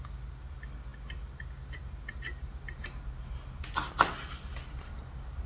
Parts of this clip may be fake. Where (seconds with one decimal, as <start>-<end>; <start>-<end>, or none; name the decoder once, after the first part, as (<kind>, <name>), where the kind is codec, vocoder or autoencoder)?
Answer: none